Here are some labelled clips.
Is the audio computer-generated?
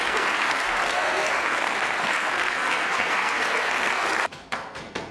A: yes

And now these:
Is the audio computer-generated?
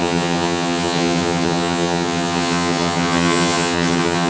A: yes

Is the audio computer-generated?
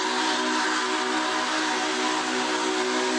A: no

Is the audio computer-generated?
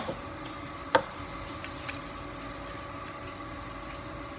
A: no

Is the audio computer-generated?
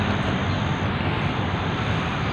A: yes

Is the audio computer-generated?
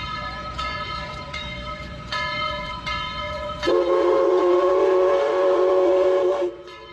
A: yes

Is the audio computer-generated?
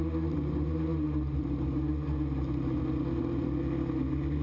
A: no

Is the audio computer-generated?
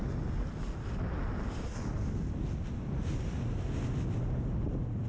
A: no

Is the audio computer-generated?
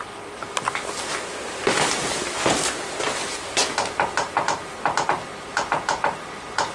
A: no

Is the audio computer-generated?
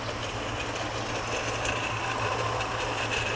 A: no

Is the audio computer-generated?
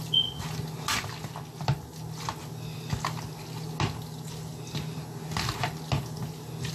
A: no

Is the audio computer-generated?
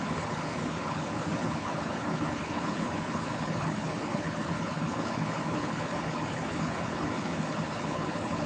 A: yes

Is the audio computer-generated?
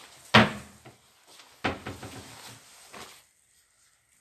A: no